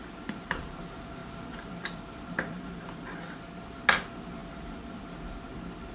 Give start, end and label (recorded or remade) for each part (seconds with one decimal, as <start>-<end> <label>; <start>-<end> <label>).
0.0-1.2 recorded; 1.2-3.4 remade; 3.4-4.4 recorded; 4.4-5.0 remade; 5.0-5.9 recorded